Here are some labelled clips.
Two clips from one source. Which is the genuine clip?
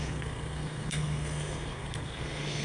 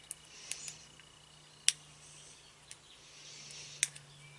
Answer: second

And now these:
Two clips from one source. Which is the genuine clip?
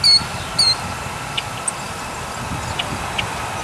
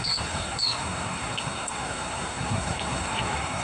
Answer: first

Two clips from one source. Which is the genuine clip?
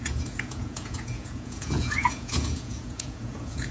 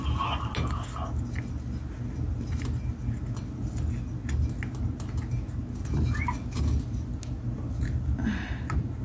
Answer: second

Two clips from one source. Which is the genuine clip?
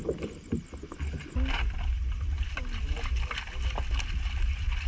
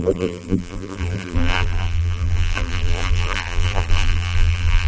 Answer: first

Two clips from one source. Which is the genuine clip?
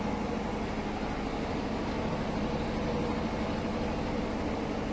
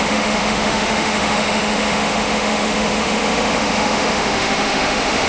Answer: first